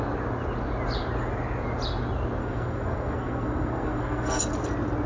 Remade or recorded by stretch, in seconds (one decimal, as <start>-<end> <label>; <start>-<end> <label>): 0.0-2.4 recorded; 2.4-4.4 remade; 4.4-5.1 recorded